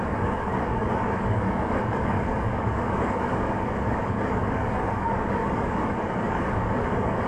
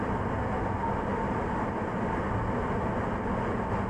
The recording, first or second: second